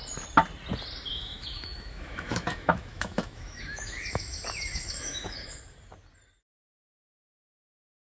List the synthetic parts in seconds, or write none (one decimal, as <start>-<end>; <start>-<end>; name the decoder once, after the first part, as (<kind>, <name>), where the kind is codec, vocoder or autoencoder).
1.1-5.6 (autoencoder, DAC-VAE)